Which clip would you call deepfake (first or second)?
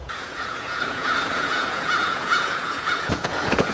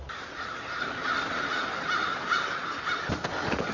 first